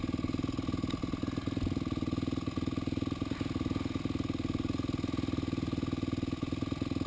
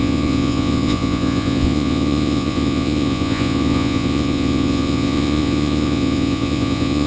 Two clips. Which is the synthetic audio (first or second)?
second